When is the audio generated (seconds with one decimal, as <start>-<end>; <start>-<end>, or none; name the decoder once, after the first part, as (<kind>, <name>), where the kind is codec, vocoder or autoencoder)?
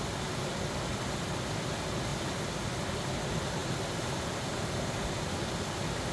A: none